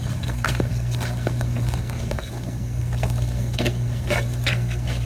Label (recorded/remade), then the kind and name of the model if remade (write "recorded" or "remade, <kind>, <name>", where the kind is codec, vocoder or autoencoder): remade, codec, SNAC